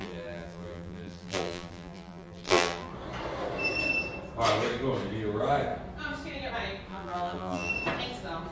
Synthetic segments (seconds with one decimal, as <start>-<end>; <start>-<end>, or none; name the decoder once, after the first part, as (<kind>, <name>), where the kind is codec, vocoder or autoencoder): 0.0-2.9 (vocoder, BigVGAN v2); 6.9-7.7